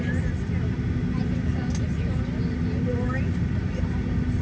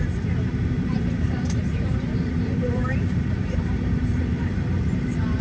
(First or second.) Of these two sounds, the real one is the first